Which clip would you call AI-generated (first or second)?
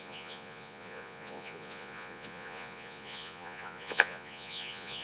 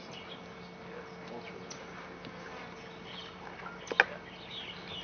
first